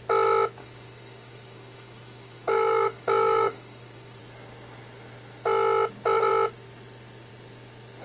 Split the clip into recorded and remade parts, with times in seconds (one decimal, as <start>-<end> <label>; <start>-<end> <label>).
0.0-0.6 recorded; 0.6-4.2 remade; 4.2-8.0 recorded